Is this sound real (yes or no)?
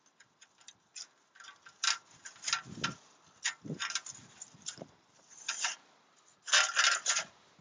yes